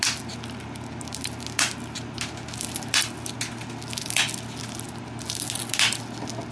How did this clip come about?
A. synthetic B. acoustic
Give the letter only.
B